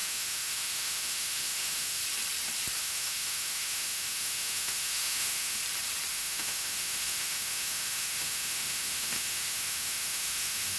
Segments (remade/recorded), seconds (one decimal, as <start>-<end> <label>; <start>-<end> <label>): 0.0-2.0 remade; 2.0-2.8 recorded; 2.8-5.6 remade; 5.6-6.1 recorded; 6.1-10.8 remade